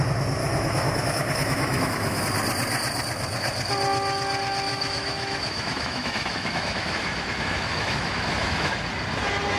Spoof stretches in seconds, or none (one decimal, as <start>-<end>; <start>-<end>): 0.4-2.2; 4.7-8.7